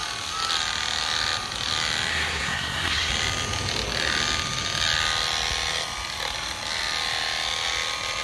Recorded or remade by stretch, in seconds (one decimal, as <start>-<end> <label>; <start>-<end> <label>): 0.0-2.1 recorded; 2.1-3.1 remade; 3.1-8.2 recorded